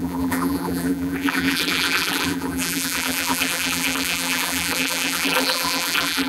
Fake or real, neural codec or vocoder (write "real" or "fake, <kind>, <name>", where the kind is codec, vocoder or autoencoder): fake, vocoder, BigVGAN v2